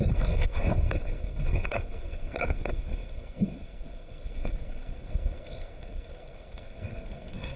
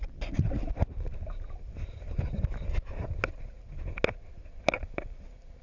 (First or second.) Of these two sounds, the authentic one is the second